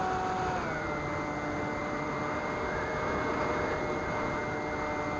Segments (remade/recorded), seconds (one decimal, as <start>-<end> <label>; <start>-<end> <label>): 0.0-1.8 recorded; 1.8-4.4 remade; 4.4-5.2 recorded